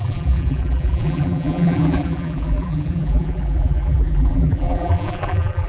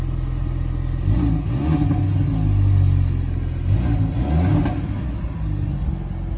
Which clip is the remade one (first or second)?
first